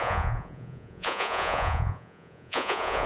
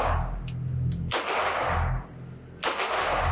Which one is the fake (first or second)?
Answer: first